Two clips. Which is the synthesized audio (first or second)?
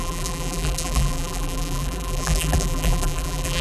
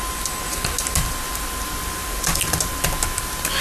first